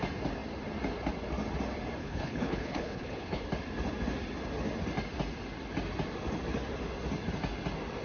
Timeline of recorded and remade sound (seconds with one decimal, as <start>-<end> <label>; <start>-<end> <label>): 0.0-2.0 recorded; 2.0-3.4 remade; 3.4-8.0 recorded